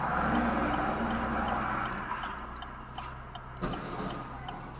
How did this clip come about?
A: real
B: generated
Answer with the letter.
A